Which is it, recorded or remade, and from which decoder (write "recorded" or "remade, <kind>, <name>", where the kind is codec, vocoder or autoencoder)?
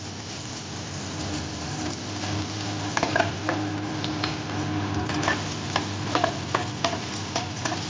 recorded